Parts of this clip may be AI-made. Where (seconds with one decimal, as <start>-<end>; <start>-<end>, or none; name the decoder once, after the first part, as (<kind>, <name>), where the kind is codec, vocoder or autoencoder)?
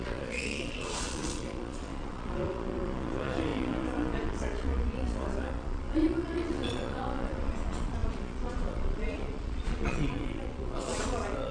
0.0-11.5 (vocoder, Vocos)